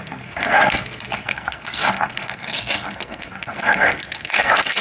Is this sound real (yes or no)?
no